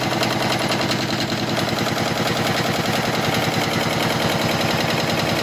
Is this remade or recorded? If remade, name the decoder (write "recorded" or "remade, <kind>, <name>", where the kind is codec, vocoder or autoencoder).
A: recorded